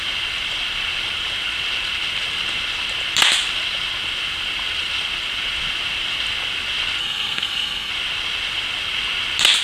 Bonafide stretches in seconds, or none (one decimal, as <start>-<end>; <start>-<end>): 0.0-7.0; 7.9-9.6